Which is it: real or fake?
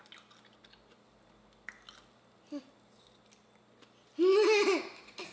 real